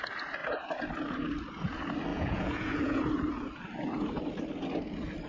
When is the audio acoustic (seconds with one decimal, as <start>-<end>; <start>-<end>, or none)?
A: 0.0-2.1; 3.0-5.3